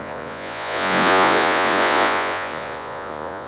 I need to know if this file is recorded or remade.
remade